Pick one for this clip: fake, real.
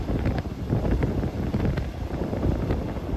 fake